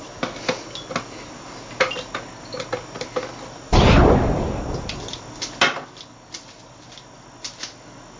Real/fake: real